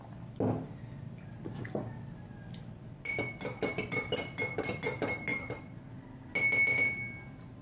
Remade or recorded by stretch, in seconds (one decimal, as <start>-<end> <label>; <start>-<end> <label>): 0.0-7.6 recorded